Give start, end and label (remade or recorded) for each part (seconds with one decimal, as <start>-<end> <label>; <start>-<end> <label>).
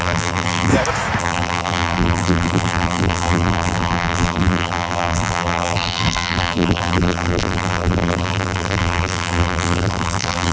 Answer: 0.0-0.7 remade; 0.7-1.2 recorded; 1.2-10.5 remade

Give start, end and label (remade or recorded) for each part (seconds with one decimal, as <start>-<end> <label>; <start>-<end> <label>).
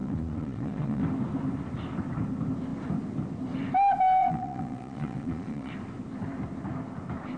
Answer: 0.0-1.0 remade; 1.0-4.2 recorded; 4.2-5.7 remade; 5.7-7.4 recorded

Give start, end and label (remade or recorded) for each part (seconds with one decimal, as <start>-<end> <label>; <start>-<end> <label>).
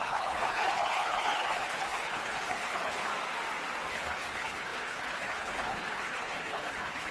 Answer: 0.0-3.1 remade; 3.1-3.9 recorded; 3.9-7.1 remade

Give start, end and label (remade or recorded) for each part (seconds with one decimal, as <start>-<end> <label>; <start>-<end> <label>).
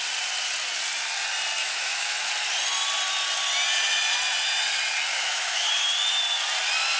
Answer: 0.0-1.6 recorded; 1.6-2.3 remade; 2.3-5.1 recorded; 5.1-5.7 remade; 5.7-7.0 recorded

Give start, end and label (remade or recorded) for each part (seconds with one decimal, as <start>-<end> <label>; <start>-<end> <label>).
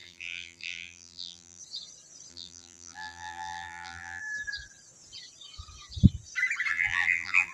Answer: 0.0-1.6 remade; 1.6-2.3 recorded; 2.3-4.2 remade; 4.2-6.7 recorded; 6.7-7.5 remade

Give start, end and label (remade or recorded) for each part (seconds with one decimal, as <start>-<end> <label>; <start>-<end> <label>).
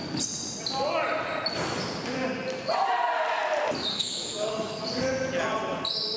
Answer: 0.0-3.9 recorded; 3.9-4.8 remade; 4.8-6.2 recorded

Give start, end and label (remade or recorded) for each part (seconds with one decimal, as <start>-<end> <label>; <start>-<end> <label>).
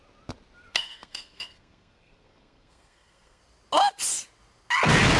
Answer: 0.0-0.7 recorded; 0.7-3.4 remade; 3.4-5.2 recorded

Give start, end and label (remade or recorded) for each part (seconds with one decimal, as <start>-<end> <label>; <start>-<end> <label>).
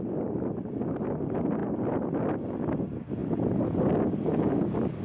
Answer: 0.0-5.0 recorded